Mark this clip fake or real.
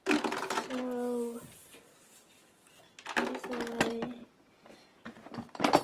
real